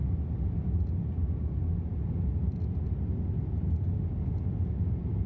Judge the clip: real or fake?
real